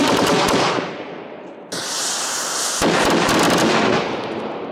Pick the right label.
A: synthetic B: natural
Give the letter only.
B